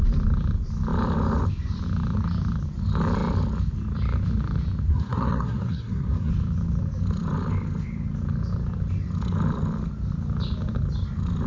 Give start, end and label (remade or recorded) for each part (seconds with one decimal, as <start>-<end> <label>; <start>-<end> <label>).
0.0-4.9 recorded; 4.9-6.3 remade; 6.3-11.5 recorded